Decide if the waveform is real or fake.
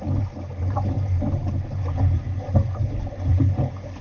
real